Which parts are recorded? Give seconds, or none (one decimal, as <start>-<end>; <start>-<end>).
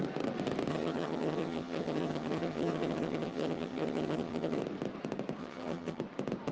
0.0-0.7; 4.6-5.4; 6.0-6.5